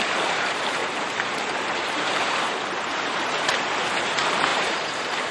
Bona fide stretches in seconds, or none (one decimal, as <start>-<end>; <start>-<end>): none